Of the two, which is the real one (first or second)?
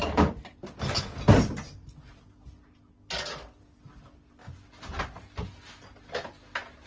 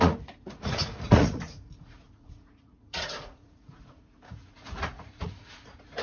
first